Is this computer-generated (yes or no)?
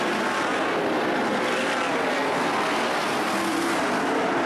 no